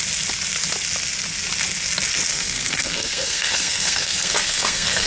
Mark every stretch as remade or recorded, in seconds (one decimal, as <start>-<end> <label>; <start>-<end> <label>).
0.0-2.3 recorded; 2.3-5.1 remade